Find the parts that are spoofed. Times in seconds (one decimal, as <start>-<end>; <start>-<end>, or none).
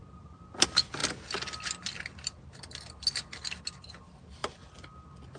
none